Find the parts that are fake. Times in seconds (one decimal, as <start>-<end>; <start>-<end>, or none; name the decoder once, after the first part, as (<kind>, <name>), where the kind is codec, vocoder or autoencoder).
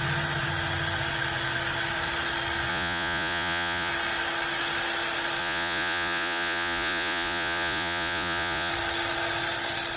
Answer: 2.7-3.9 (vocoder, Vocos); 5.4-8.7